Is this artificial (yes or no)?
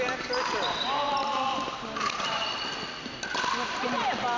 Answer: no